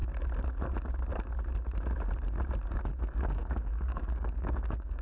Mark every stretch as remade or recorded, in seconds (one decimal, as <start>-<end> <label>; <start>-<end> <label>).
0.0-3.0 recorded; 3.0-5.0 remade